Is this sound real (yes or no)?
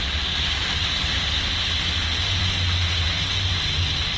yes